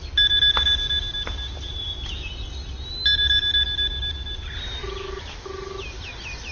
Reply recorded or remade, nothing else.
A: recorded